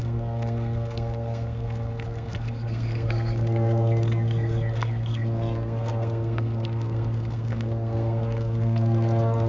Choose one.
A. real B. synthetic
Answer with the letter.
B